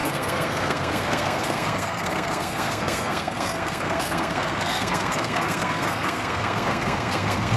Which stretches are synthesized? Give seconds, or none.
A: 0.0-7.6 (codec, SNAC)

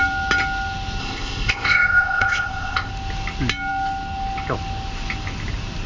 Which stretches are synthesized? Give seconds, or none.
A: 1.0-2.9 (codec, ZipCodec)

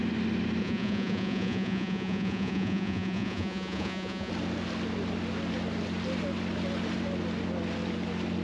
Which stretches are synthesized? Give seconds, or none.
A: 0.6-4.3 (vocoder, Vocos)